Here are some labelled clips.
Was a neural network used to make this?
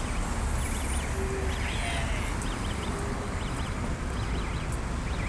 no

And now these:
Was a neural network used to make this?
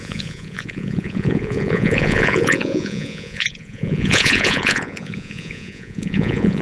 yes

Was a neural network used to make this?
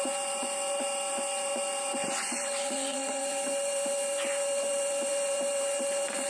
yes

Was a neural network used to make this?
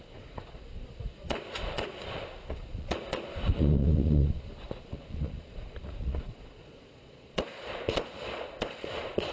yes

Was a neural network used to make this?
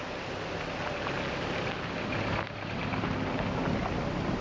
no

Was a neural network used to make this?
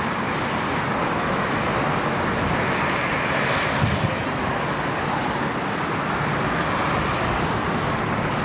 no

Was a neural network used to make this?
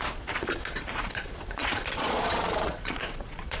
yes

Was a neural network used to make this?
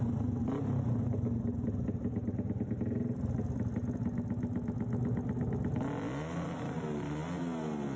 no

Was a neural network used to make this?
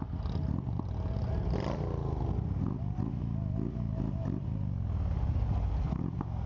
no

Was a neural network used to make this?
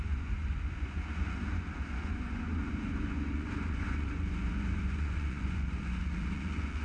yes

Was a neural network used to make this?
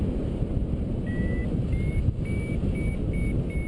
no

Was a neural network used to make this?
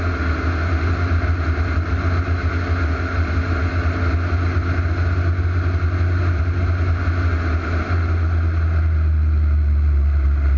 no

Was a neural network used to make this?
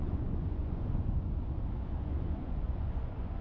yes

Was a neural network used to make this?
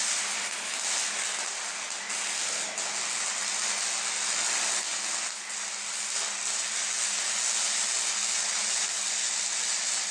no